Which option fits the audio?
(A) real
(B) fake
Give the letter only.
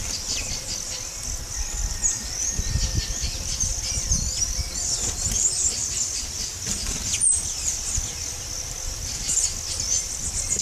A